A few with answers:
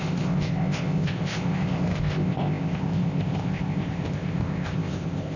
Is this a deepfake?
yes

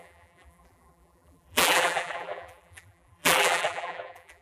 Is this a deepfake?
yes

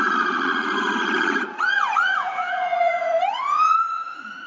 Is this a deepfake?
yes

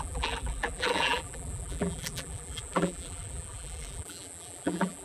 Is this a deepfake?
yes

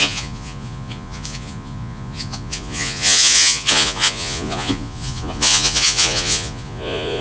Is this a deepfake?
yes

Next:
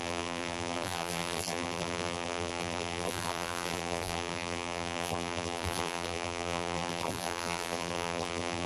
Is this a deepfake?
yes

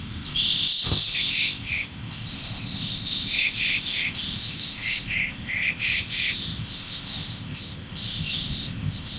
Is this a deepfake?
yes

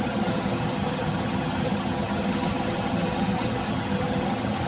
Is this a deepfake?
yes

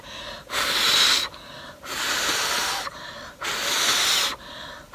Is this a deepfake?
no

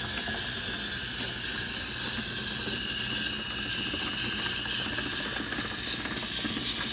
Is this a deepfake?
no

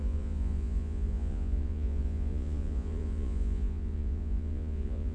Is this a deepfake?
yes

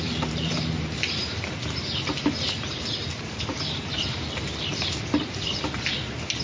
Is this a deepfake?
yes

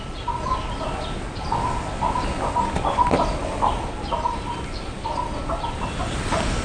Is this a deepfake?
no